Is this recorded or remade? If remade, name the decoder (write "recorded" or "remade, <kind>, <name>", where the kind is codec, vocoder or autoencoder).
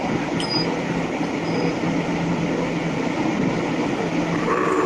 recorded